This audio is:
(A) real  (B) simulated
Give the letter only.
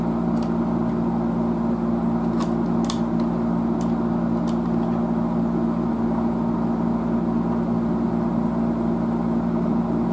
A